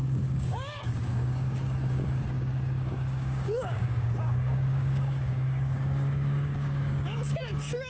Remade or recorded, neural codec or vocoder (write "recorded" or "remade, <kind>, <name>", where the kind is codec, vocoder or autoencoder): remade, codec, DAC